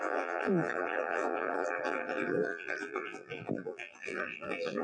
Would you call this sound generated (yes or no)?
yes